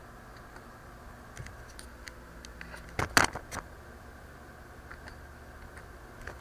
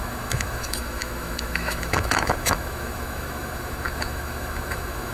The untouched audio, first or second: first